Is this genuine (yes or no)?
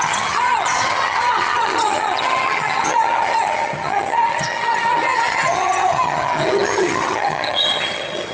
no